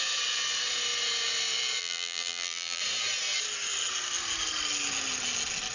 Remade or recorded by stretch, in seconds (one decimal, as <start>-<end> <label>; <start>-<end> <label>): 0.0-1.8 recorded; 1.8-2.8 remade; 2.8-5.7 recorded